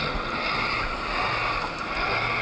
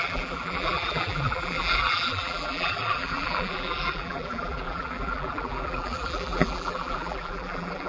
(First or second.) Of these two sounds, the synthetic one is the second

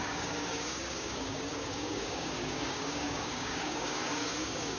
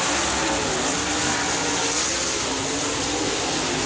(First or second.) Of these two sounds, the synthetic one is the first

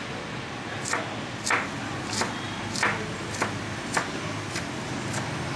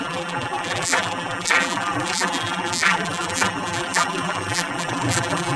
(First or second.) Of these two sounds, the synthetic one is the second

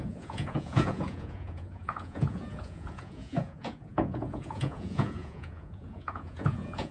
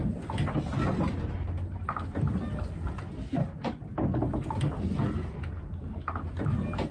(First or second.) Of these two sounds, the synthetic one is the first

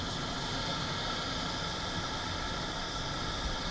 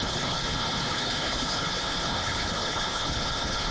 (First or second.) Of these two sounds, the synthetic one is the second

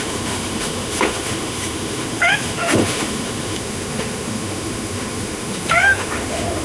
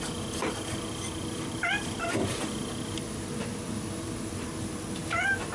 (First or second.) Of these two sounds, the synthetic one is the first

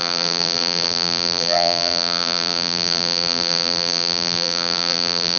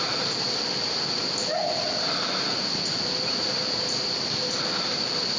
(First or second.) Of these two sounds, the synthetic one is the first